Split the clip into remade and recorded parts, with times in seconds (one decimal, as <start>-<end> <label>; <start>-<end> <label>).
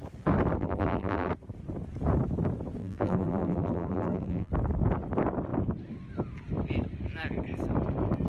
0.0-0.6 recorded; 0.6-1.3 remade; 1.3-2.8 recorded; 2.8-4.5 remade; 4.5-8.3 recorded